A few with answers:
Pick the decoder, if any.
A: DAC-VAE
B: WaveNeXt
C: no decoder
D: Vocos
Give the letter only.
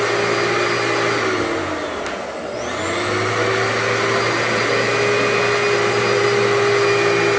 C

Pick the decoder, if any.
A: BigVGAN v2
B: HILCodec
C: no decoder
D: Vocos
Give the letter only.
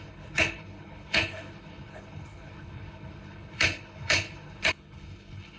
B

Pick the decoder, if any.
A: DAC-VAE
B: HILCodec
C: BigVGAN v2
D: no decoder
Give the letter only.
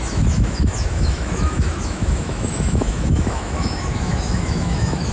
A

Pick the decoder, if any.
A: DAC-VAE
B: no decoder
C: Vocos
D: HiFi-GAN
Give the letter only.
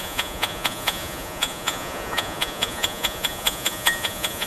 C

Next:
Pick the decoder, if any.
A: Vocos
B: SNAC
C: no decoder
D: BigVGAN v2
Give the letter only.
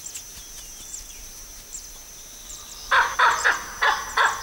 C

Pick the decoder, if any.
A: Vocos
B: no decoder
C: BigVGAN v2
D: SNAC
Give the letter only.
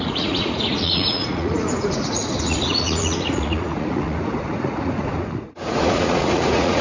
A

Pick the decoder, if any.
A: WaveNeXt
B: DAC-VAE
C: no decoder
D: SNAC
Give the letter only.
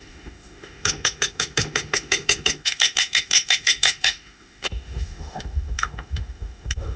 B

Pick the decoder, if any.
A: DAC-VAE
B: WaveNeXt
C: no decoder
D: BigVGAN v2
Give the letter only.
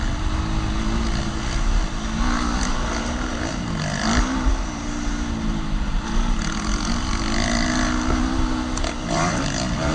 C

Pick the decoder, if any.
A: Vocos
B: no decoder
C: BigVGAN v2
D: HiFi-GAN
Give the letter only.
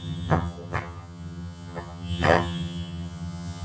D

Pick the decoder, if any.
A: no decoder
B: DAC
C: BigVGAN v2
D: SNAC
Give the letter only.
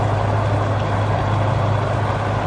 A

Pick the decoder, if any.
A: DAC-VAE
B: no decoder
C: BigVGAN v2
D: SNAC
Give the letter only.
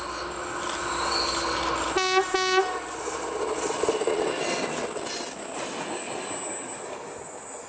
B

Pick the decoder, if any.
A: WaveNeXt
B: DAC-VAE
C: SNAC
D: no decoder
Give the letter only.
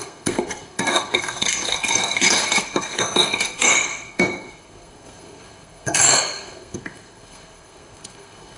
C